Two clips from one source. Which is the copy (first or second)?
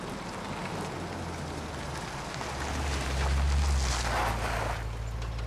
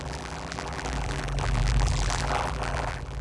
second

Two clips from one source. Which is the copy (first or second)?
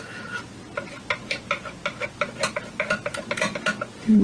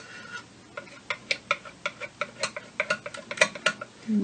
first